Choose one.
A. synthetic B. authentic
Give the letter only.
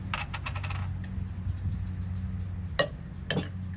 B